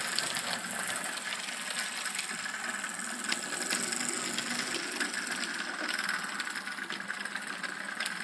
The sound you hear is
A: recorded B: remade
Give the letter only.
A